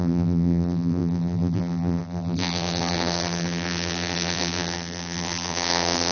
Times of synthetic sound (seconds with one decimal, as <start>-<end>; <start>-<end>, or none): 0.0-6.1